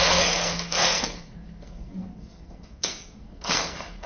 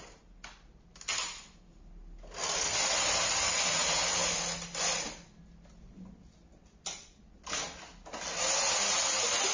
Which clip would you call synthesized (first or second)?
first